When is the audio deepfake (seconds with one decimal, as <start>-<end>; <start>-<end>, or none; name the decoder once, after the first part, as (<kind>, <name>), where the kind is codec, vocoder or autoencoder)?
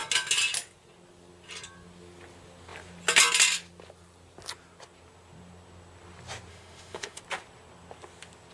6.5-7.2 (autoencoder, DAC-VAE)